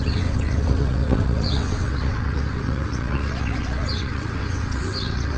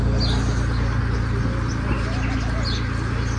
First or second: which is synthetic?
first